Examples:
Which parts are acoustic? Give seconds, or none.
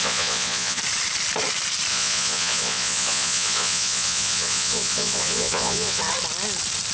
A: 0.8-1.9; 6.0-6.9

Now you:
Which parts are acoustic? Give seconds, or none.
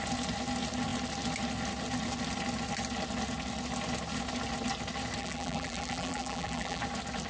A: 0.0-5.2; 6.8-7.3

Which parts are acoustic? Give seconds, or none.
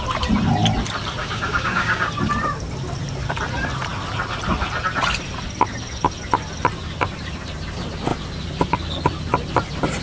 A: 0.0-1.2; 2.1-10.0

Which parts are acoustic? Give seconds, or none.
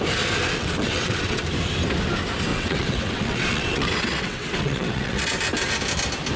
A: 0.0-0.6; 1.4-2.5; 5.3-6.4